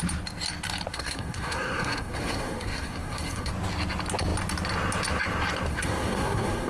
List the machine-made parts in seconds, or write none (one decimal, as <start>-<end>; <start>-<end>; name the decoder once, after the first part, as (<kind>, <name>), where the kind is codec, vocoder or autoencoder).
0.9-3.5 (codec, SNAC); 5.7-6.7